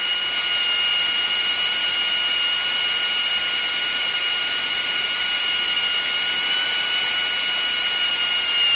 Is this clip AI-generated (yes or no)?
no